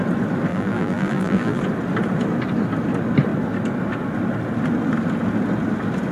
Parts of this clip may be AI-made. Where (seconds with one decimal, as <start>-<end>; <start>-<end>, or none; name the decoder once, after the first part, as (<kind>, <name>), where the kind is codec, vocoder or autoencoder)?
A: 0.5-1.6 (vocoder, BigVGAN v2)